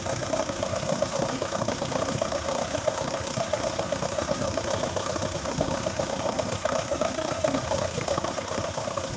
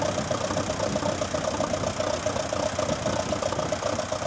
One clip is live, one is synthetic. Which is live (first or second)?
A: second